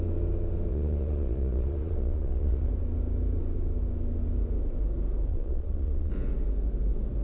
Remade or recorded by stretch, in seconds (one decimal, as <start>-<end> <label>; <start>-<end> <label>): 0.0-0.7 recorded; 0.7-2.7 remade; 2.7-5.3 recorded; 5.3-6.1 remade; 6.1-7.2 recorded